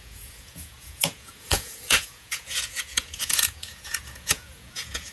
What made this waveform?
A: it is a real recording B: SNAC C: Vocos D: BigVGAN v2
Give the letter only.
C